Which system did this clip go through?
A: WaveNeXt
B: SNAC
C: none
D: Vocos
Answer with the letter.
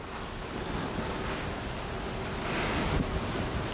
C